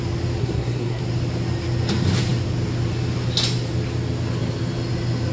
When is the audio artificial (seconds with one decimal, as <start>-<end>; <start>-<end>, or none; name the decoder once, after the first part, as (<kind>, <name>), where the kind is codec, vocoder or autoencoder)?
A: 0.4-1.0 (codec, SNAC)